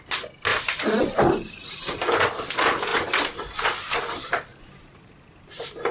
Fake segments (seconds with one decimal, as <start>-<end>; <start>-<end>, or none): 0.5-1.8; 4.5-5.9